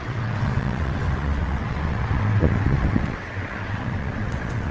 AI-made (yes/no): yes